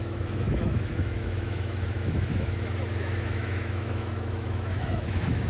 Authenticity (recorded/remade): remade